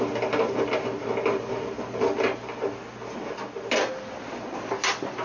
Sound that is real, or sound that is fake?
real